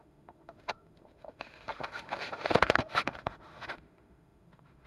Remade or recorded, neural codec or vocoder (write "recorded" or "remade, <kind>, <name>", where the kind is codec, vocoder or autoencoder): remade, autoencoder, DAC-VAE